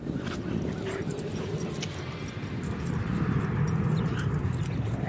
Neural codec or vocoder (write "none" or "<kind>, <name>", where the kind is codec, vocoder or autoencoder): none